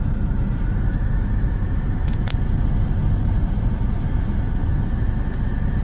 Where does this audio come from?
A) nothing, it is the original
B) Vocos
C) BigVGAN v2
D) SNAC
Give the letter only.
A